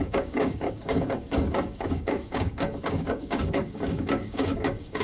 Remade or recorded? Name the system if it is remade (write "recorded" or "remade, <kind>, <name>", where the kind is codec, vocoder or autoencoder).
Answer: remade, codec, DAC